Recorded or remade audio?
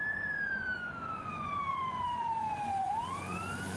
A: remade